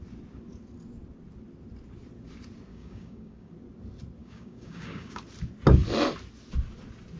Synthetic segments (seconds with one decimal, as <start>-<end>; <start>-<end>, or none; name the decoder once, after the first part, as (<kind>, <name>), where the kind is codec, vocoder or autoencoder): 2.7-3.5 (codec, DAC); 4.2-5.2